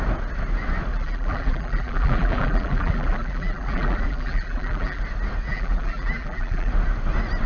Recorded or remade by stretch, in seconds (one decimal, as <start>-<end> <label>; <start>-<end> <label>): 0.0-0.9 recorded; 0.9-5.0 remade; 5.0-5.5 recorded; 5.5-6.7 remade; 6.7-7.5 recorded